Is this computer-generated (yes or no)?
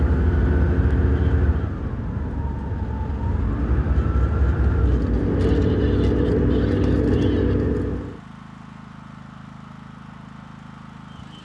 no